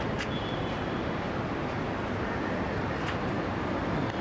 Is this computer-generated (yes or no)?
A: no